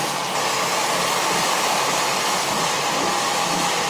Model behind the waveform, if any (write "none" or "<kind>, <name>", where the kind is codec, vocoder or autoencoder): none